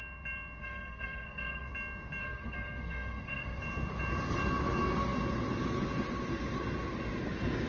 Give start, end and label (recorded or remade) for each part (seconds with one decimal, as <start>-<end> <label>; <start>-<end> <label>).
0.0-0.6 recorded; 0.6-1.7 remade; 1.7-2.2 recorded; 2.2-3.6 remade; 3.6-7.7 recorded